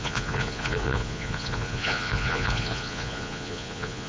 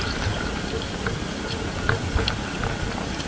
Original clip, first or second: second